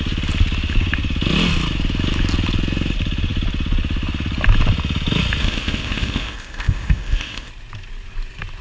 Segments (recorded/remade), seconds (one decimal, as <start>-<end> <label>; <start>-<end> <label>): 0.0-5.4 recorded; 5.4-7.5 remade; 7.5-8.6 recorded